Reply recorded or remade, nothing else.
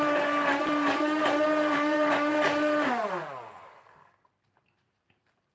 remade